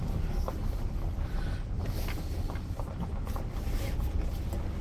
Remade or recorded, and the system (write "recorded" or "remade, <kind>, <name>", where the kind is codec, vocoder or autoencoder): recorded